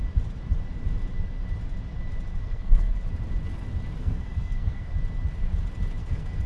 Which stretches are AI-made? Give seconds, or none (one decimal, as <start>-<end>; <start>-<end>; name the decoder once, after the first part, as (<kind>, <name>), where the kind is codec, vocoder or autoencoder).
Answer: 2.4-3.0 (codec, SNAC); 4.0-4.9; 6.0-6.5